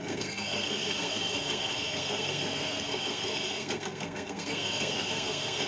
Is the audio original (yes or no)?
no